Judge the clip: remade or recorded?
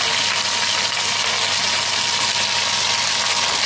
recorded